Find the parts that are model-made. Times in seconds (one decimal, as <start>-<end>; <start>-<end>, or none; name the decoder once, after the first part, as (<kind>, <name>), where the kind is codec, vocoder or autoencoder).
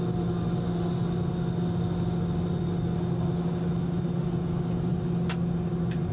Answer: none